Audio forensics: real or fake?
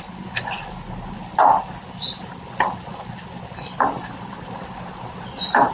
real